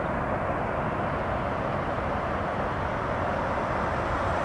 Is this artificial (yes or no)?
no